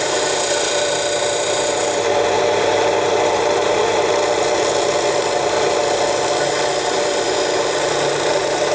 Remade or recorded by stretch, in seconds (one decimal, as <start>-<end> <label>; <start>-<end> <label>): 0.0-8.7 recorded